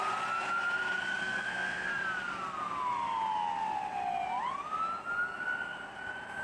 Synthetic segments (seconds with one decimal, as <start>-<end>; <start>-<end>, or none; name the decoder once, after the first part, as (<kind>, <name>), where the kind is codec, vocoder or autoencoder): 1.2-1.9 (codec, SNAC)